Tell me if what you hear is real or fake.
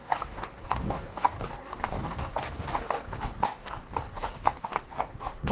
fake